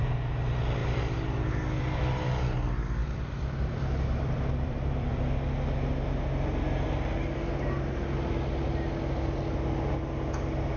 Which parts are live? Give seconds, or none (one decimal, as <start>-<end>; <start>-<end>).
0.0-3.0; 5.3-10.8